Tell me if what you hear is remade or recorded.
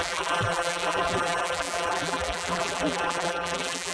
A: remade